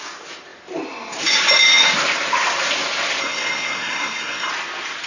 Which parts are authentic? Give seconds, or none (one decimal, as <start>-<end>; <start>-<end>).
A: 0.0-3.2; 4.5-5.1